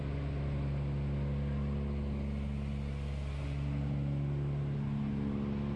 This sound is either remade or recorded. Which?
recorded